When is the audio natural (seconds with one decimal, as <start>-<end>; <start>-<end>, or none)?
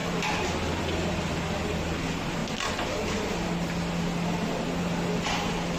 0.0-5.8